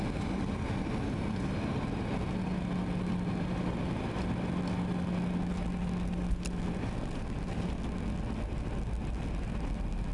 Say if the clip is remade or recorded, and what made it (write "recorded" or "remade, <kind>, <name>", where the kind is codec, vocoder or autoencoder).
recorded